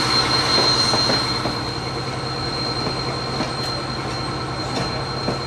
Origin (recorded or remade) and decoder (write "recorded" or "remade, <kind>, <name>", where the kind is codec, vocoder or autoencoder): recorded